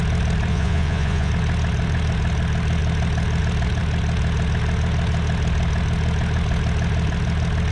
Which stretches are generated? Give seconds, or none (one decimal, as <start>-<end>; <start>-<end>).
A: 0.5-1.3